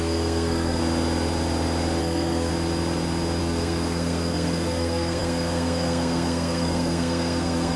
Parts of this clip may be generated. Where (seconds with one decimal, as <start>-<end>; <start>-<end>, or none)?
0.0-0.8; 2.0-2.5; 3.4-7.8